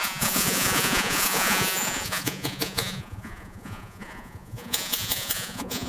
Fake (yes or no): yes